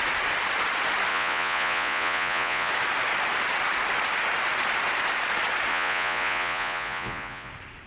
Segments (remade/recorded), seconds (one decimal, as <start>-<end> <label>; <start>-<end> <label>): 0.0-1.1 recorded; 1.1-2.7 remade; 2.7-5.7 recorded; 5.7-7.5 remade; 7.5-7.9 recorded